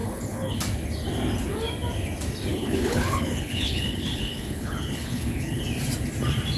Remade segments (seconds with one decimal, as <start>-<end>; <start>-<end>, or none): 0.0-0.6; 2.5-5.6